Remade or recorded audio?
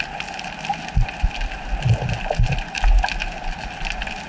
recorded